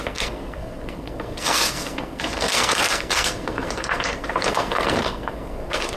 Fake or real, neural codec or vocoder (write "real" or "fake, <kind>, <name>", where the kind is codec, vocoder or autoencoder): fake, codec, SNAC